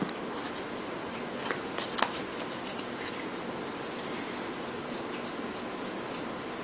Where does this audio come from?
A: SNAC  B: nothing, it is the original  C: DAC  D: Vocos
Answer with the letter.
B